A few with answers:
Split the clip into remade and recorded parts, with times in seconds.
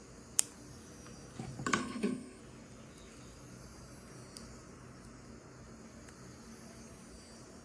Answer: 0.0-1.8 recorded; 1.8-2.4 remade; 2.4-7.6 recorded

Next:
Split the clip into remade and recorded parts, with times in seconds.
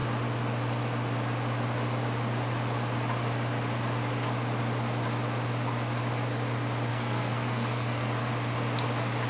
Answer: 0.0-6.9 recorded; 6.9-8.3 remade; 8.3-9.3 recorded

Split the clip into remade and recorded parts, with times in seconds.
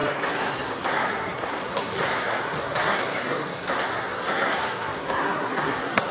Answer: 0.0-6.1 remade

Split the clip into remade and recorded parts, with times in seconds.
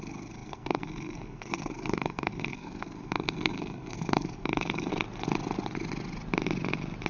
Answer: 0.0-4.9 remade; 4.9-7.1 recorded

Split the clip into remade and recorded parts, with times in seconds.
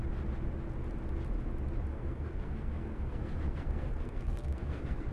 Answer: 0.0-1.9 recorded; 1.9-5.1 remade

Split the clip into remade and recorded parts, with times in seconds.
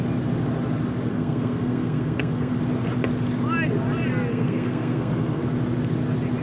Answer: 0.0-1.1 recorded; 1.1-2.5 remade; 2.5-4.3 recorded; 4.3-5.4 remade; 5.4-6.4 recorded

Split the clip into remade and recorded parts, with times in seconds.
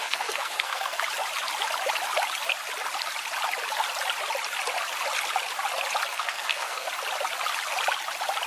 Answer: 0.0-1.0 remade; 1.0-6.1 recorded; 6.1-6.9 remade; 6.9-8.5 recorded